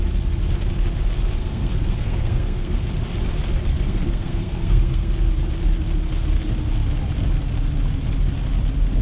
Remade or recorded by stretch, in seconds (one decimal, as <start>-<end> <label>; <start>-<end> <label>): 0.0-1.4 recorded; 1.4-2.9 remade; 2.9-3.7 recorded; 3.7-5.1 remade; 5.1-9.0 recorded